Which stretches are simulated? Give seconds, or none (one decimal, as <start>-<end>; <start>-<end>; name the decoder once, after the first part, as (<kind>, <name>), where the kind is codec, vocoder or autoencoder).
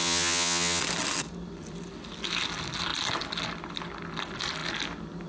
0.0-0.8 (vocoder, HiFi-GAN)